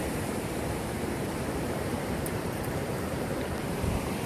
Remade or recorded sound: remade